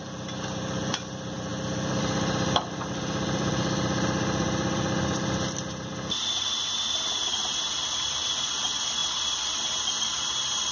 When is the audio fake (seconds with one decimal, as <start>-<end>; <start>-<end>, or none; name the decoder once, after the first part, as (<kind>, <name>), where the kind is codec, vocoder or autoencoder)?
0.0-10.7 (vocoder, BigVGAN v2)